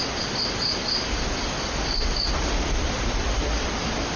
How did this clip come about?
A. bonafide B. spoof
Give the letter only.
A